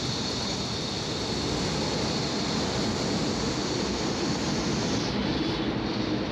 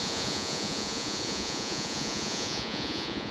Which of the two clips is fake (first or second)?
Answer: second